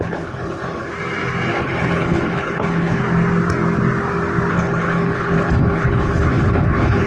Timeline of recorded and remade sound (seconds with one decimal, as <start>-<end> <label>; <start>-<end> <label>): 0.0-0.9 remade; 0.9-1.5 recorded; 1.5-3.0 remade; 3.0-4.5 recorded; 4.5-7.1 remade